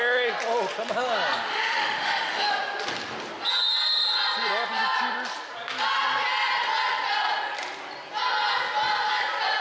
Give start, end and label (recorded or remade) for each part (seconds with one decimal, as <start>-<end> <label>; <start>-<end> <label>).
0.0-1.5 recorded; 1.5-2.5 remade; 2.5-9.6 recorded